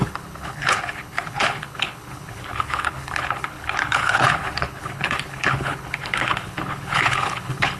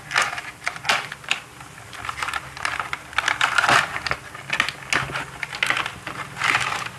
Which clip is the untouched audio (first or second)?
second